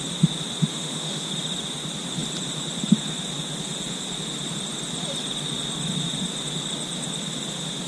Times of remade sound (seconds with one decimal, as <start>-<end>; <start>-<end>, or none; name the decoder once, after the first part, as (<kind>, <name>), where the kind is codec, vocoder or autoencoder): 0.7-1.3 (autoencoder, DAC-VAE)